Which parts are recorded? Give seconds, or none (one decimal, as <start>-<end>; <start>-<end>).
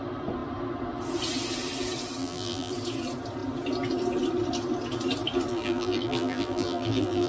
0.0-2.2; 2.7-5.5